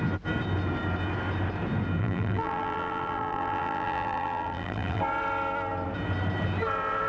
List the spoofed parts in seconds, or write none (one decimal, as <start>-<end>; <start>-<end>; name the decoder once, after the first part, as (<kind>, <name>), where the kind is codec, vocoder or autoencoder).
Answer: 2.0-5.0 (vocoder, BigVGAN v2)